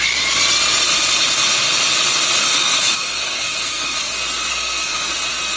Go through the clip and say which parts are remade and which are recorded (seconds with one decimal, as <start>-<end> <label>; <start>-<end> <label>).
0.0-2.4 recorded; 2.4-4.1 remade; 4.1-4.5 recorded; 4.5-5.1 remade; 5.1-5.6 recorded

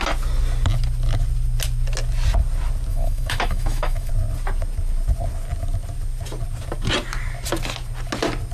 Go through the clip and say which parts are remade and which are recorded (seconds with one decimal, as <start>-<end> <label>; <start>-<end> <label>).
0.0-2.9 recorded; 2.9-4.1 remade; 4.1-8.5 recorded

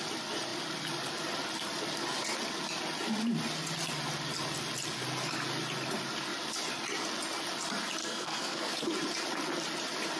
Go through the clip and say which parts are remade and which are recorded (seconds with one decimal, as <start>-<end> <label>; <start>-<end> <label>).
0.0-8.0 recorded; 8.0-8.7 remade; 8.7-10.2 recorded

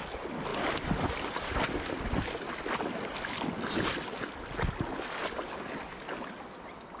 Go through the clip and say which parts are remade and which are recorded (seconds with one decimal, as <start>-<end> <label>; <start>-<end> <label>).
0.0-7.0 recorded

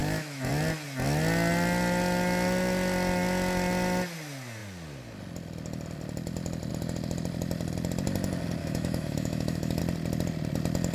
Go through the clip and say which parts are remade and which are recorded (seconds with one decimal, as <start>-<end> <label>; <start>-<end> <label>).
0.0-0.5 remade; 0.5-8.6 recorded; 8.6-9.8 remade; 9.8-10.9 recorded

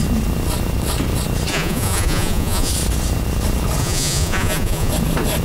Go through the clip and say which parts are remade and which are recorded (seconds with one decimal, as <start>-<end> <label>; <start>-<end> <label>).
0.0-1.5 recorded; 1.5-2.7 remade; 2.7-3.8 recorded; 3.8-4.9 remade; 4.9-5.4 recorded

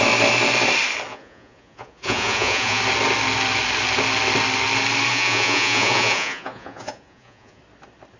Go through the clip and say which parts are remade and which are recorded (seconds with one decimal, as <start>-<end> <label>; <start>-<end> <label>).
0.0-1.1 recorded; 1.1-2.8 remade; 2.8-5.1 recorded; 5.1-7.6 remade; 7.6-8.2 recorded